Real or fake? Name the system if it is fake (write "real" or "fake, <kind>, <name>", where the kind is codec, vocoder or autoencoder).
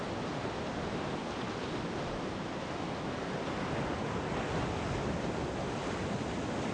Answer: real